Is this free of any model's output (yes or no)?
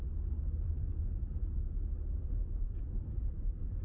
yes